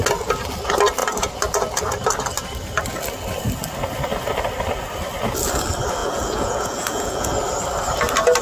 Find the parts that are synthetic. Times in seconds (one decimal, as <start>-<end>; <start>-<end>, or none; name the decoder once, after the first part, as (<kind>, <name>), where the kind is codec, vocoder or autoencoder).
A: 6.0-7.3 (vocoder, Vocos)